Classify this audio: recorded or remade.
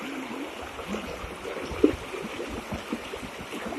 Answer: recorded